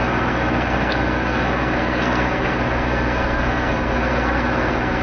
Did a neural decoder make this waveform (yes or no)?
yes